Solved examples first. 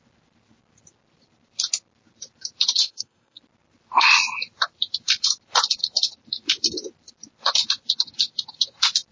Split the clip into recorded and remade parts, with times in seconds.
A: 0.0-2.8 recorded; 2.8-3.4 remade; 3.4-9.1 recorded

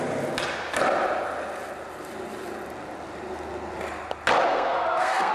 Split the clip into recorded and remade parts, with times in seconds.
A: 0.0-4.5 recorded; 4.5-5.3 remade

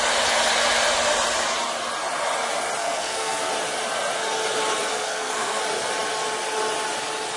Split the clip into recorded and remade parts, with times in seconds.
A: 0.0-2.8 recorded; 2.8-3.5 remade; 3.5-4.9 recorded; 4.9-5.6 remade; 5.6-7.4 recorded

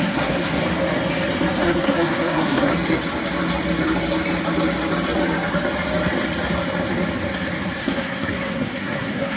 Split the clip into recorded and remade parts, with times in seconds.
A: 0.0-0.6 remade; 0.6-1.6 recorded; 1.6-2.7 remade; 2.7-7.8 recorded; 7.8-9.4 remade